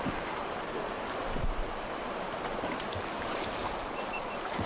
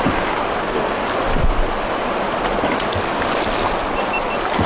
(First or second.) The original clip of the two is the second